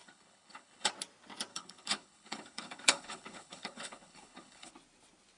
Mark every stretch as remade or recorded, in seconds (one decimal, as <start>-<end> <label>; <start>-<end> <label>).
0.0-0.9 remade; 0.9-1.5 recorded; 1.5-4.7 remade; 4.7-5.4 recorded